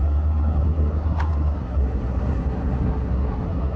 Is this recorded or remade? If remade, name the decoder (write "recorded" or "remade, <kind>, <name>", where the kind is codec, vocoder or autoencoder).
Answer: remade, codec, SNAC